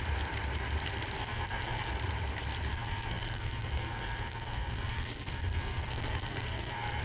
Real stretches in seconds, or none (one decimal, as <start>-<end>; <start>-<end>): 0.0-1.2; 1.9-2.7